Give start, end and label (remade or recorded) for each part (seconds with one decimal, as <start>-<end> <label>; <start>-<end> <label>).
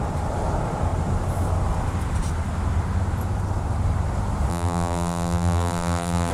0.0-4.5 recorded; 4.5-6.3 remade